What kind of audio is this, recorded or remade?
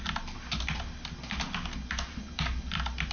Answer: recorded